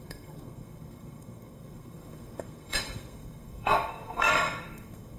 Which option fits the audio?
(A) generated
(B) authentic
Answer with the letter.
A